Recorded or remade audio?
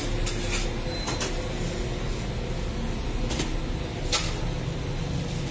recorded